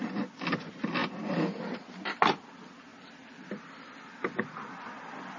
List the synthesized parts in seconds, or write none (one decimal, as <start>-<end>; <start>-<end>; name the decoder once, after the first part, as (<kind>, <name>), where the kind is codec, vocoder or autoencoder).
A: none